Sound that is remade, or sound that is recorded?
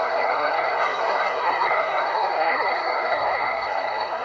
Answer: remade